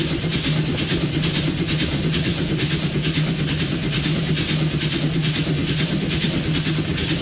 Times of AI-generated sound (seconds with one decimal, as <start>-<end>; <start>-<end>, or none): none